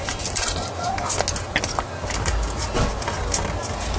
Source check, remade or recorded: recorded